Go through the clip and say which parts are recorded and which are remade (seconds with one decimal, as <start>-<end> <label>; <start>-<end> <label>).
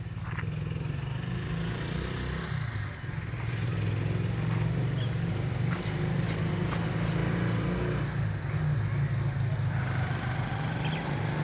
0.0-11.4 recorded